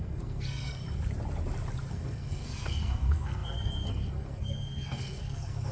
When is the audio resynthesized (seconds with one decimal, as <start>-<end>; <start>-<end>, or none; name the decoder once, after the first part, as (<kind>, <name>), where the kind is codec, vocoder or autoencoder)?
0.0-0.8 (codec, SNAC); 1.9-5.7